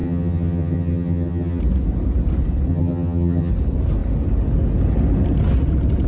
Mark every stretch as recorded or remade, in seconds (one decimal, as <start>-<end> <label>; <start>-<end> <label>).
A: 0.0-1.6 remade; 1.6-2.7 recorded; 2.7-3.5 remade; 3.5-6.1 recorded